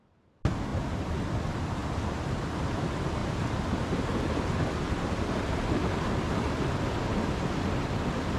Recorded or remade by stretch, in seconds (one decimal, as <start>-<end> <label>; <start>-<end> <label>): 0.0-8.4 recorded